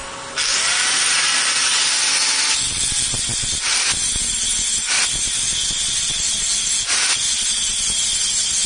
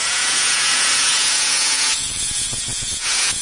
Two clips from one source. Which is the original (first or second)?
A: first